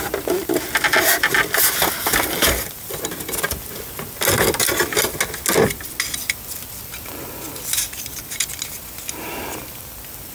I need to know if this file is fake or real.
real